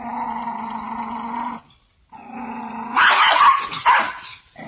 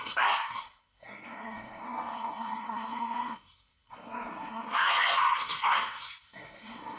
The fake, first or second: second